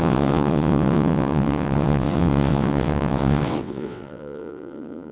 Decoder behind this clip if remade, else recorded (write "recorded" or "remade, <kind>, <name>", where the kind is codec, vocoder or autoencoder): remade, vocoder, WaveNeXt